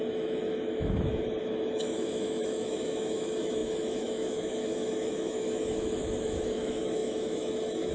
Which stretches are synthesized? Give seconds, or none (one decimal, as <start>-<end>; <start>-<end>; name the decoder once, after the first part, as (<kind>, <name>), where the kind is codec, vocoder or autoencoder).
0.0-7.9 (autoencoder, DAC-VAE)